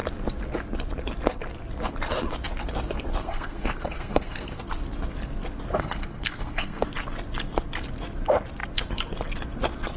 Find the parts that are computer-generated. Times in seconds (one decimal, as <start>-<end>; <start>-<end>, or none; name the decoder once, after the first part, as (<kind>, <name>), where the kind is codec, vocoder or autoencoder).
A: 3.2-4.6 (codec, SNAC); 5.7-6.9